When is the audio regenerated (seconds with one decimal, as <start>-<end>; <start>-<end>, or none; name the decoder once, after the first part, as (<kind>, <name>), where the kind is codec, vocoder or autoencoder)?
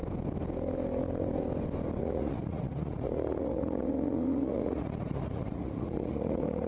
2.0-6.7 (vocoder, Vocos)